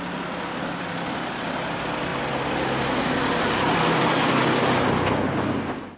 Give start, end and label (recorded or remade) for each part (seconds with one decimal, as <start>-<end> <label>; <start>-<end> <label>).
0.0-6.0 recorded